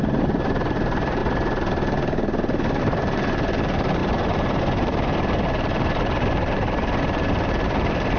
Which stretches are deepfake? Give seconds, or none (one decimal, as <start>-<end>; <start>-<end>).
0.0-1.2; 2.8-8.2